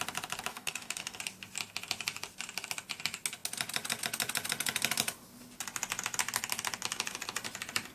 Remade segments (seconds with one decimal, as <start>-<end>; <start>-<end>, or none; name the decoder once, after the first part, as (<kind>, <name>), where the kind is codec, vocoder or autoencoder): 0.5-1.2 (codec, DAC)